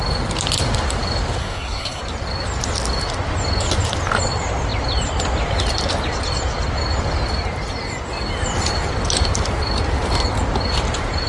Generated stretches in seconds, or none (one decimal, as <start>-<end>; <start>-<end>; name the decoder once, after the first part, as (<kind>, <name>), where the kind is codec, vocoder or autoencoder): 1.4-2.0 (codec, SNAC)